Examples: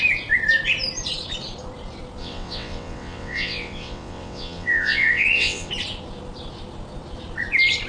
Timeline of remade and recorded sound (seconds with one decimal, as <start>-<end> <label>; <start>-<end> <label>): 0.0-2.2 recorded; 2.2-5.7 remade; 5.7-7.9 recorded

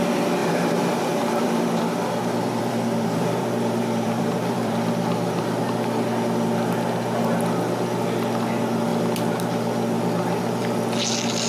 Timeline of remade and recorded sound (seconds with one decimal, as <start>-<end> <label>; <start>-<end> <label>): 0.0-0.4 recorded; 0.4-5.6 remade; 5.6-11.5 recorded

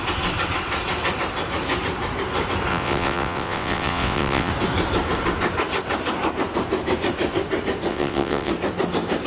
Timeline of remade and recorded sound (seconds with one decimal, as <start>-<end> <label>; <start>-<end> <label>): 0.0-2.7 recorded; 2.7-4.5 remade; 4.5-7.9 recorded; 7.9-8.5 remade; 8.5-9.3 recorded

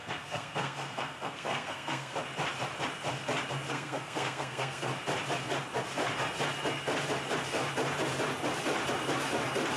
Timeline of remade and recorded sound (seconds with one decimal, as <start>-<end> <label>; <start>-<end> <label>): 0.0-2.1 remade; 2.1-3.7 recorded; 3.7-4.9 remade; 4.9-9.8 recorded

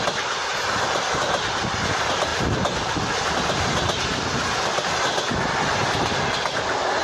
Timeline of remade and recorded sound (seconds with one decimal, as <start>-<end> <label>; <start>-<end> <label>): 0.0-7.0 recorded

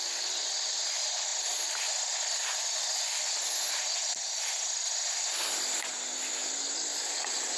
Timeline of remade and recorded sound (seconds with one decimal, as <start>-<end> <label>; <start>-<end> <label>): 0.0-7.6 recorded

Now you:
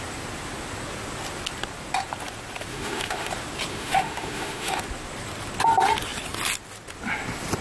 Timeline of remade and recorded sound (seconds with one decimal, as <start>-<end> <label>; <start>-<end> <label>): 0.0-2.7 recorded; 2.7-3.3 remade; 3.3-3.7 recorded; 3.7-4.8 remade; 4.8-7.6 recorded